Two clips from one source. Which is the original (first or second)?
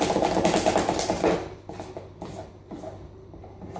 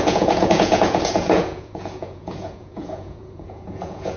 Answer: first